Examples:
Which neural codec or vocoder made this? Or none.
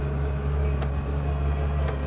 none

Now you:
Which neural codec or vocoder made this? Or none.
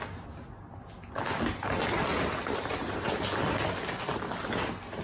none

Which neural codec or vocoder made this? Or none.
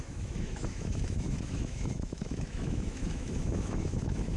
autoencoder, DAC-VAE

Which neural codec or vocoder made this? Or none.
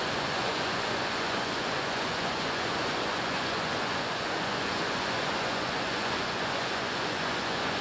vocoder, Vocos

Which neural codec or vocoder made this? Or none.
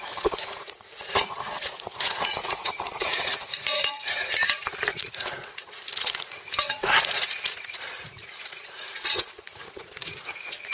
vocoder, Vocos